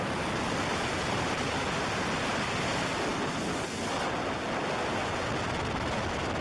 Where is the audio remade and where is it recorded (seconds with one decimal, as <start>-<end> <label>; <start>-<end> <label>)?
0.0-6.4 recorded